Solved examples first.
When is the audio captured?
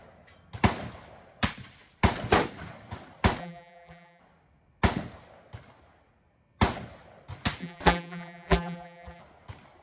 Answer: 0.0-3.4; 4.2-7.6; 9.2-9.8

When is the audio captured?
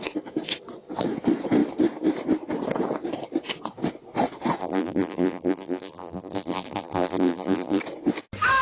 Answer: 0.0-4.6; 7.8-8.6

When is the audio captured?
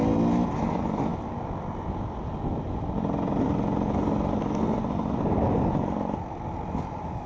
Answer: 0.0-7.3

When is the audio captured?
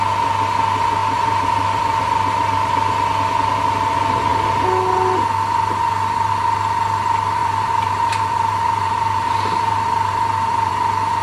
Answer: 0.0-1.0; 2.0-7.4; 10.7-11.2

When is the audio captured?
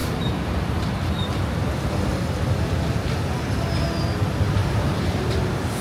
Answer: 0.8-4.6